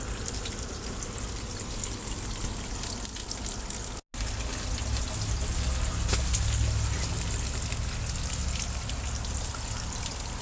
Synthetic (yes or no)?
no